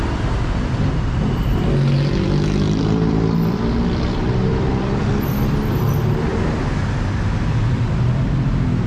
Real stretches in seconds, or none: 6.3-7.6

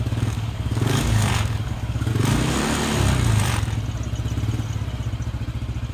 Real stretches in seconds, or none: 2.1-5.9

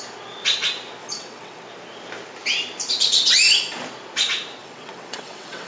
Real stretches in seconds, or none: 0.0-1.0; 1.6-4.6

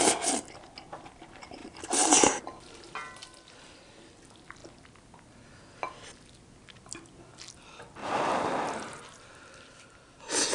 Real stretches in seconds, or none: 0.0-1.6; 2.4-8.0; 9.2-10.5

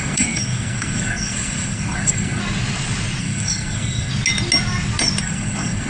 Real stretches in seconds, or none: 2.4-3.2; 4.1-5.2

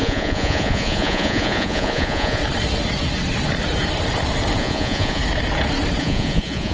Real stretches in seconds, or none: 2.4-4.6; 5.2-6.0